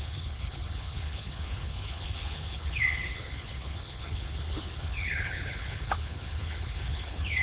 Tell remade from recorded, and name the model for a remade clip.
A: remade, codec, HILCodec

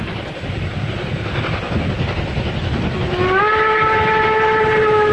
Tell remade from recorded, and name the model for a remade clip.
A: recorded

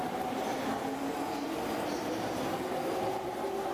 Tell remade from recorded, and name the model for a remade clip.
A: recorded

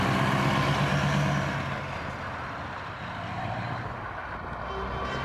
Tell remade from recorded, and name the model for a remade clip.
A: recorded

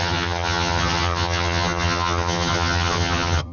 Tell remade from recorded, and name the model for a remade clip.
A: remade, vocoder, HiFi-GAN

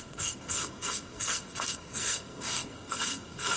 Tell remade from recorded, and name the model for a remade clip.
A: remade, codec, SNAC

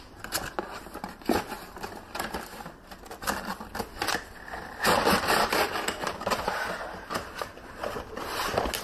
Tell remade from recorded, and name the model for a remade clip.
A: recorded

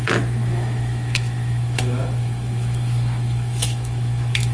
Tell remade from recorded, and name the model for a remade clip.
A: remade, autoencoder, DAC-VAE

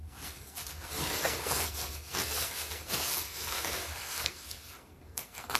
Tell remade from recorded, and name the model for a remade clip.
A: remade, codec, SNAC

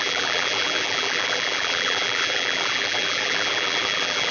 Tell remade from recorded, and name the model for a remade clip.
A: remade, vocoder, BigVGAN v2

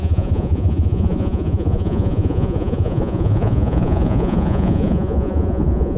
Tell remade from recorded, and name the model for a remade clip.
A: remade, vocoder, Vocos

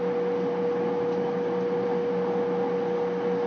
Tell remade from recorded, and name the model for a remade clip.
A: recorded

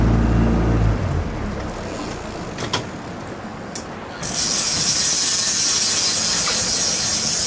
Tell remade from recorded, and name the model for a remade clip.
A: recorded